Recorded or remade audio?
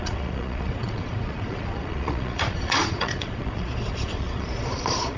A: remade